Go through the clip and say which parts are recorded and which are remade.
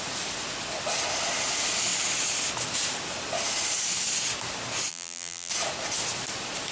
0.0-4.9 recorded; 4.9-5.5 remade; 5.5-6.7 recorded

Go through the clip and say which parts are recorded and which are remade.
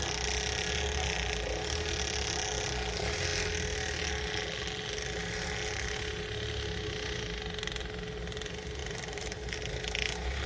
0.0-8.8 recorded; 8.8-9.4 remade; 9.4-10.5 recorded